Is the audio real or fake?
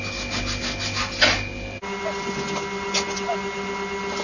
real